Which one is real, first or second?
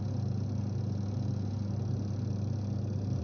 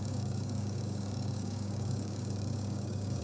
first